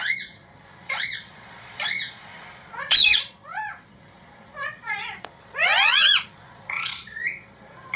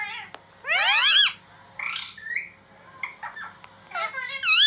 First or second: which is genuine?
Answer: second